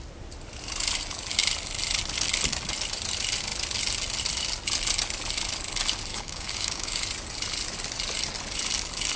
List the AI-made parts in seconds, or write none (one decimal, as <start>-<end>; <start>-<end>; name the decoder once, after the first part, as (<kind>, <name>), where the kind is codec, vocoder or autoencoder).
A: 6.1-7.0 (codec, DAC)